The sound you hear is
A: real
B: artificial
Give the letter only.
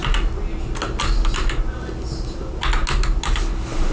A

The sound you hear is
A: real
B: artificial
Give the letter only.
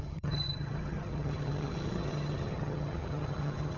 B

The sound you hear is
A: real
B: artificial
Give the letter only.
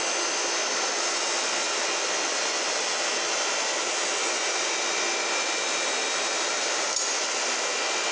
A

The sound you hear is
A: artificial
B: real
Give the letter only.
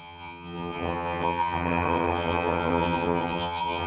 A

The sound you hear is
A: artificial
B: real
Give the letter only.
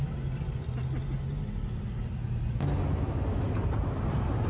B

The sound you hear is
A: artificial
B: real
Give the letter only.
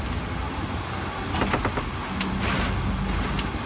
B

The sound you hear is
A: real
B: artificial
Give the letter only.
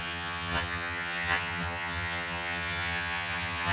B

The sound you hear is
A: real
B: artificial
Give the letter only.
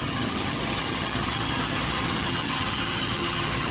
B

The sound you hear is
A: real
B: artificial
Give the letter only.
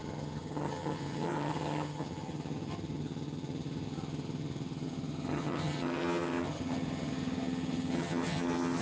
B